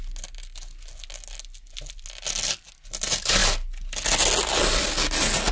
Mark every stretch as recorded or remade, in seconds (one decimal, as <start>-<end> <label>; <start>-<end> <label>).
0.0-5.5 recorded